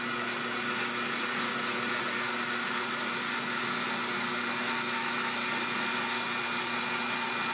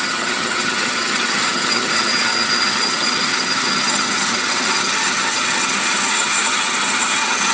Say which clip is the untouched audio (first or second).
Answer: first